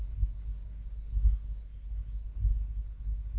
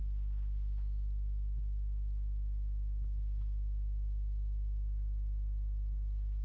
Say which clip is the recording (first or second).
second